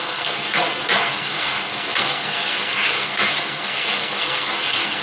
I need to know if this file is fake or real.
fake